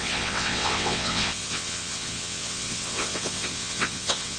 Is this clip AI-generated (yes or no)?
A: yes